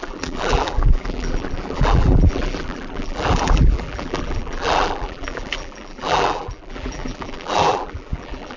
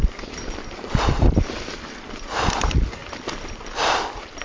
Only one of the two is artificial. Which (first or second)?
first